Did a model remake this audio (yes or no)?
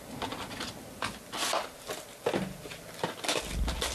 no